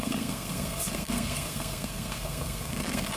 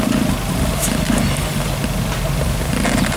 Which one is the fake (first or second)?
first